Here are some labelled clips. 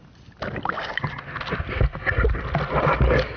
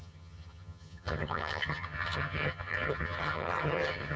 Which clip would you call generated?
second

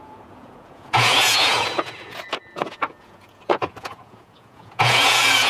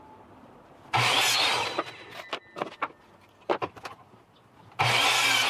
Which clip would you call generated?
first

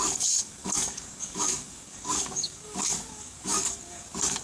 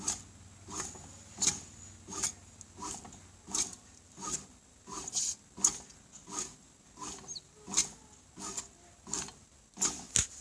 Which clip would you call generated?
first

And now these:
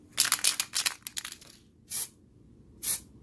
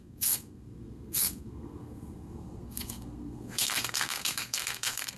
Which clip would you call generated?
second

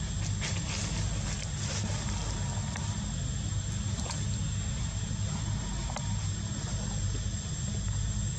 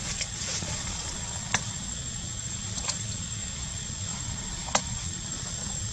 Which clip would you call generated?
second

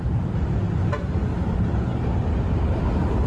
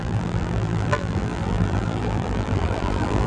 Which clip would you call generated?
second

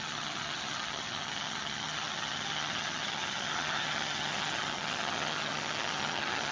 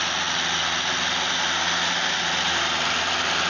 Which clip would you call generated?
first